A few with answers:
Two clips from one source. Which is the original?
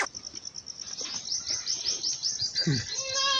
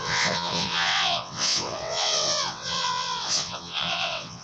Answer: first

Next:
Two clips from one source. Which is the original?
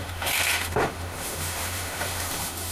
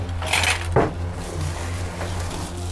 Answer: second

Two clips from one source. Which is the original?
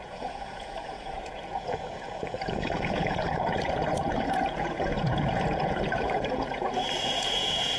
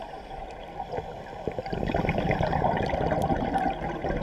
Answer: second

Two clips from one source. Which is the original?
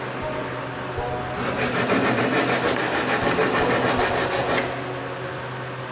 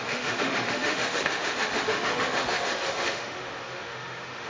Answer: first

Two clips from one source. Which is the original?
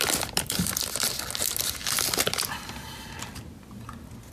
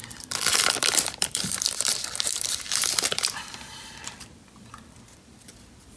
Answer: first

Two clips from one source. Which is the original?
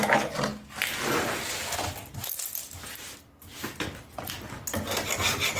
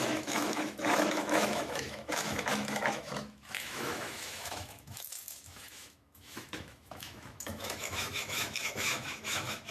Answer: first